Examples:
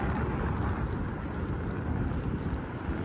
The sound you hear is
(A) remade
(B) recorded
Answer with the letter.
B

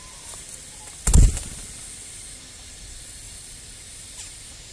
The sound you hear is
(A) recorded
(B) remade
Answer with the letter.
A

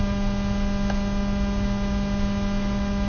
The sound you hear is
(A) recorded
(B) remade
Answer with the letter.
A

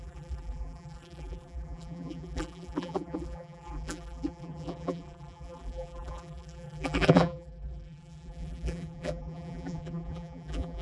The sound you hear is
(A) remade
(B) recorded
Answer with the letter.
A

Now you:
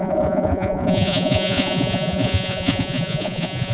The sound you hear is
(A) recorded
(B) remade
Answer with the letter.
B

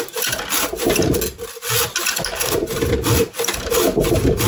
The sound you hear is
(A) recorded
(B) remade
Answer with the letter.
A